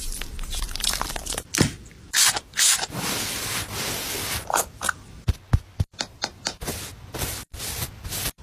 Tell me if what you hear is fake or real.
fake